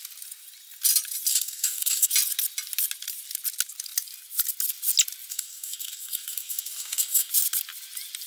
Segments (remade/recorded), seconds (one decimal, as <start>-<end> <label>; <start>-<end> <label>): 0.0-1.3 recorded; 1.3-2.1 remade; 2.1-5.3 recorded; 5.3-7.3 remade; 7.3-8.3 recorded